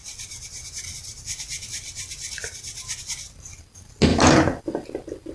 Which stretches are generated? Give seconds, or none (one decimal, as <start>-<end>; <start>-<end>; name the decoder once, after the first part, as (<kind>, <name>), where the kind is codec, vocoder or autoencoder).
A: none